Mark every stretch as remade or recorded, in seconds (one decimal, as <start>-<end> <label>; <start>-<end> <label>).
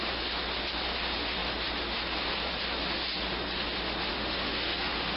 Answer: 0.0-4.1 recorded; 4.1-5.2 remade